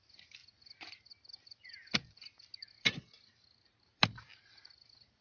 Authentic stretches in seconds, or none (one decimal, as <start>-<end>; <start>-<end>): 0.0-5.2